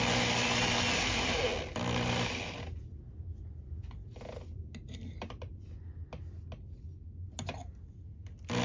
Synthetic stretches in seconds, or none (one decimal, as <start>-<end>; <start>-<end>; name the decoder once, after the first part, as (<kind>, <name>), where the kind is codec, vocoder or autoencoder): none